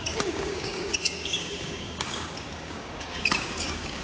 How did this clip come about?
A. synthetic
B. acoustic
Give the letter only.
A